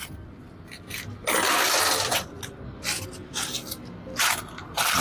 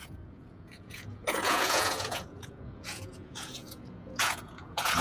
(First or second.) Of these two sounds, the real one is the first